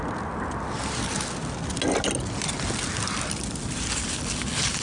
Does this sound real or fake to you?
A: real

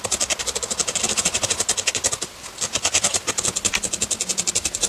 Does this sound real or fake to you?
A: real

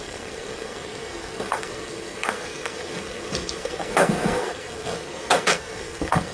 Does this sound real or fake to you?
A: fake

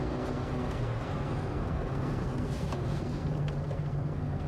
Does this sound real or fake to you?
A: fake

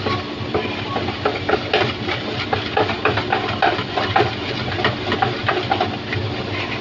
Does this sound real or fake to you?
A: real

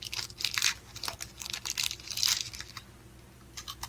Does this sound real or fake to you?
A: real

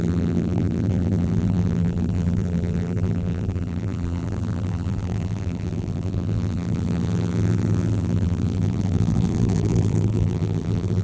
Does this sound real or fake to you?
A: fake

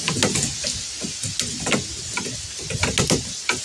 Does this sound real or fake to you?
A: real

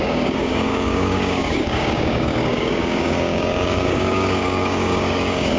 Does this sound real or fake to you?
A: fake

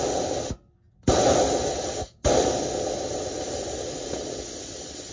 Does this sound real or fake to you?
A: real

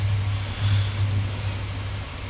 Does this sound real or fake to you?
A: real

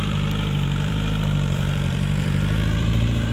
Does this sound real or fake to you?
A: fake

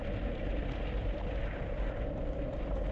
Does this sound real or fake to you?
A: real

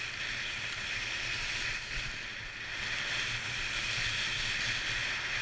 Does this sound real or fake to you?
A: real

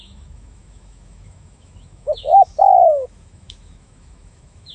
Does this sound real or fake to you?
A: fake